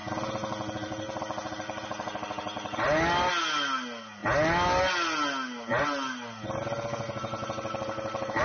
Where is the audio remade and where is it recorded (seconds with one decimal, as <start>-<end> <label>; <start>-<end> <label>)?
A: 0.0-8.4 recorded